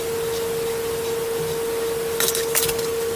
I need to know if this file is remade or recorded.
recorded